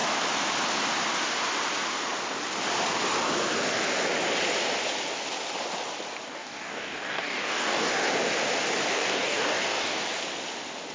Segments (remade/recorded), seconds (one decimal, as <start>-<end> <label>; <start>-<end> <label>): 0.0-6.3 recorded; 6.3-7.9 remade; 7.9-8.9 recorded; 8.9-10.0 remade; 10.0-10.9 recorded

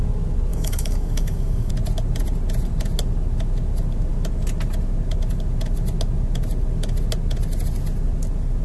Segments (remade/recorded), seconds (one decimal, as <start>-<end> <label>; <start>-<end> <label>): 0.0-0.5 recorded; 0.5-1.7 remade; 1.7-8.6 recorded

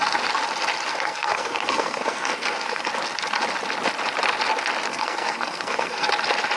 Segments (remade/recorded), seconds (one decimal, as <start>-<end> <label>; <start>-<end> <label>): 0.0-0.9 recorded; 0.9-2.9 remade; 2.9-4.9 recorded; 4.9-6.1 remade; 6.1-6.6 recorded

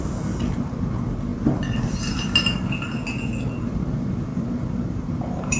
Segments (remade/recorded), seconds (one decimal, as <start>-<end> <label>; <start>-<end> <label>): 0.0-4.3 recorded; 4.3-5.6 remade

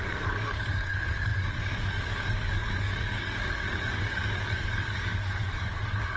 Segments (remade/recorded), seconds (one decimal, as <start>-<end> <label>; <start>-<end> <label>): 0.0-6.2 remade

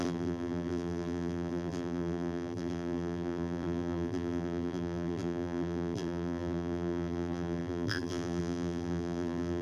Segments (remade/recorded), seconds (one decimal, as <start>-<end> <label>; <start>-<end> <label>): 0.0-9.6 remade

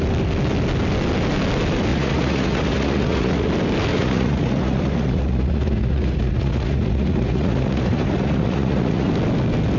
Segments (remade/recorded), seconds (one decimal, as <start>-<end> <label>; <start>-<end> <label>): 0.0-1.9 recorded; 1.9-3.5 remade; 3.5-3.9 recorded; 3.9-9.1 remade; 9.1-9.8 recorded